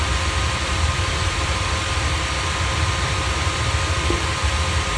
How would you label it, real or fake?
fake